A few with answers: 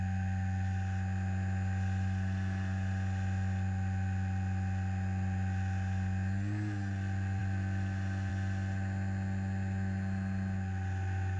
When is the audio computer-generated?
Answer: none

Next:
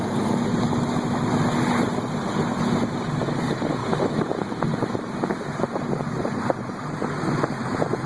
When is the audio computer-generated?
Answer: 3.8-6.2 (vocoder, BigVGAN v2)

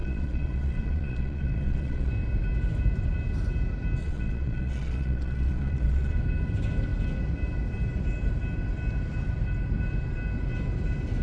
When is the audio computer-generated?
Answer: 0.0-2.1 (vocoder, Vocos); 4.0-6.1

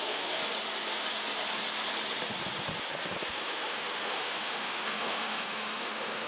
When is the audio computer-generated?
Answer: 0.0-0.4 (autoencoder, DAC-VAE); 3.3-6.3

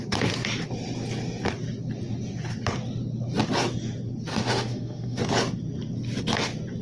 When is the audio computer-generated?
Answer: 4.3-5.2 (autoencoder, DAC-VAE)

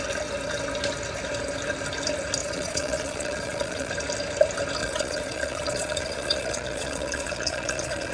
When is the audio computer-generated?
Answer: 2.4-3.9 (vocoder, Vocos); 4.8-8.1

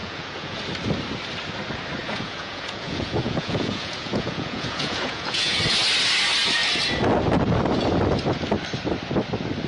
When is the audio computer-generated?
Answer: 0.0-0.6 (vocoder, Vocos); 2.0-5.6

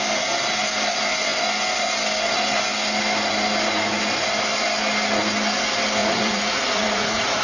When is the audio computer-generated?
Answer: 6.0-7.4 (vocoder, Vocos)